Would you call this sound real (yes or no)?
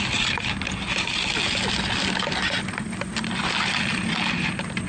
yes